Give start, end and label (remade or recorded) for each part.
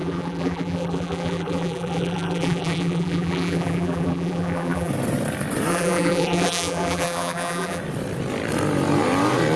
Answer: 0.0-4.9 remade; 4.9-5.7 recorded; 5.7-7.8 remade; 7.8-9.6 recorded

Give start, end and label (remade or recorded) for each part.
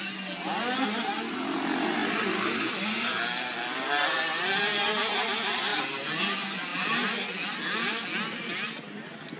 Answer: 0.0-2.0 recorded; 2.0-3.2 remade; 3.2-5.7 recorded; 5.7-6.2 remade; 6.2-9.4 recorded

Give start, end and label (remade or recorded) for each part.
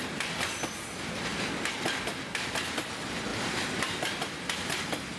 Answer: 0.0-5.2 recorded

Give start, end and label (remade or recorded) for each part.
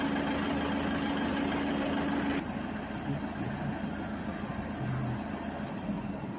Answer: 0.0-6.4 recorded